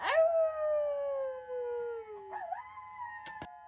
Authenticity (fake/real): real